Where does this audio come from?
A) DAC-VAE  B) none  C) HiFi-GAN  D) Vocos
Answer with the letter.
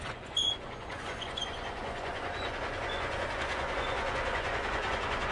D